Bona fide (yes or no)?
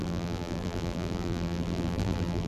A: no